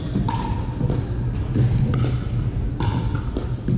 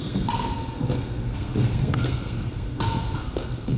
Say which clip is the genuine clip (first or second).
first